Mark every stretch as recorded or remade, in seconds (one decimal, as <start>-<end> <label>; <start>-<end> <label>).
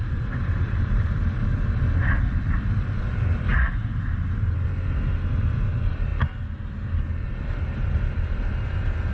0.0-3.5 remade; 3.5-5.5 recorded; 5.5-6.1 remade; 6.1-7.1 recorded; 7.1-9.1 remade